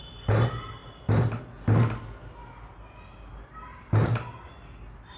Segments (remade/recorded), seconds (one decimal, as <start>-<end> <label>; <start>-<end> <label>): 0.0-5.2 recorded